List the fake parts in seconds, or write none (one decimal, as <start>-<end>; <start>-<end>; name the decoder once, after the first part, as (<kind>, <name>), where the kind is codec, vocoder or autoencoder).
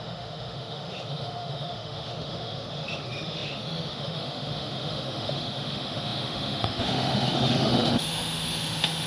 0.0-9.1 (autoencoder, DAC-VAE)